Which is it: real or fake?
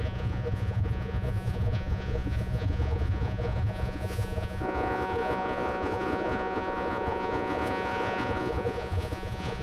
fake